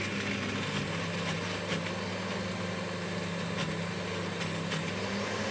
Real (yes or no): yes